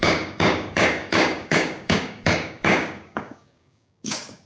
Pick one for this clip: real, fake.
fake